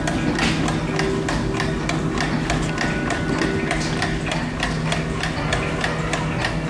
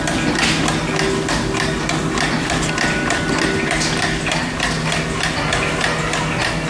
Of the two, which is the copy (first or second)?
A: second